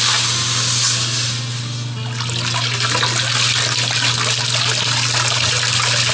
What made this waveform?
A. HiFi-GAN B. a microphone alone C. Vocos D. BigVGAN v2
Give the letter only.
B